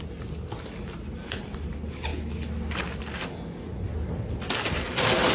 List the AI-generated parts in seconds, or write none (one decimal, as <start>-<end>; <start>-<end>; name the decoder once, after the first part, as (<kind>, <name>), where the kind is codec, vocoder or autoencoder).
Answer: none